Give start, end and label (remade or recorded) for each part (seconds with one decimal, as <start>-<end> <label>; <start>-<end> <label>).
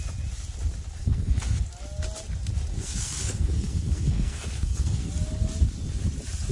0.0-1.0 recorded; 1.0-1.6 remade; 1.6-2.7 recorded; 2.7-5.1 remade; 5.1-6.5 recorded